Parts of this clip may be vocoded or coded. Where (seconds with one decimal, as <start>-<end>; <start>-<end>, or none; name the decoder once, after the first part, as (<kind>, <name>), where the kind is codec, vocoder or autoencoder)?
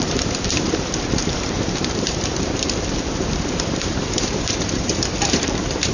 0.0-1.2 (vocoder, BigVGAN v2); 1.8-5.9